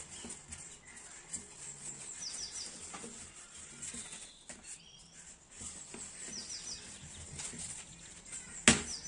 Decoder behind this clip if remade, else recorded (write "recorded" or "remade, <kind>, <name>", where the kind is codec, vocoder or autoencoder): recorded